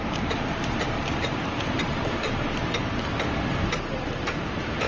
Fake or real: fake